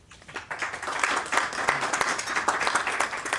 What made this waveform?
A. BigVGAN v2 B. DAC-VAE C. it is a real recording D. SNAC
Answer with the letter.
C